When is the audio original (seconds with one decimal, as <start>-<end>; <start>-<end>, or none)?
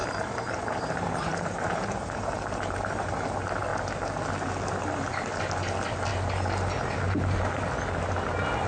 3.2-8.7